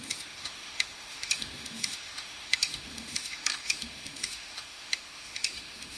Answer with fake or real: fake